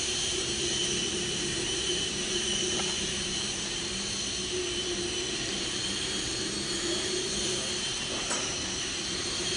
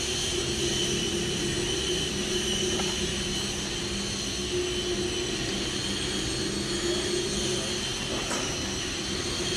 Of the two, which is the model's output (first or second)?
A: first